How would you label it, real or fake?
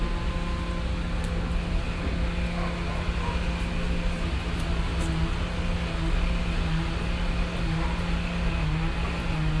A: real